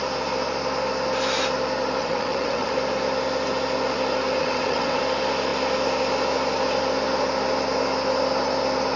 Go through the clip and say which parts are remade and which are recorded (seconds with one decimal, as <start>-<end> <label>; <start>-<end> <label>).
0.0-2.0 recorded; 2.0-2.7 remade; 2.7-4.4 recorded; 4.4-5.0 remade; 5.0-9.0 recorded